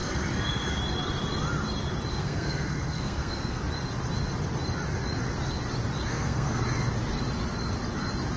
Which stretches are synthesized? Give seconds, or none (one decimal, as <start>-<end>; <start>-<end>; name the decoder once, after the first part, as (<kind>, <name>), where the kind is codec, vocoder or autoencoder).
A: 0.0-0.7 (codec, SNAC); 2.1-3.6; 6.1-6.6